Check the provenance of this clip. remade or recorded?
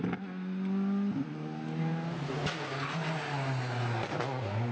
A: recorded